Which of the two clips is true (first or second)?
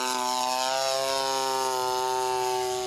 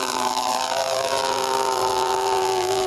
first